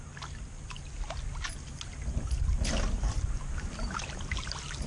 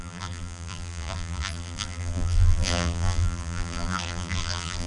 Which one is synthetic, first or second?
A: second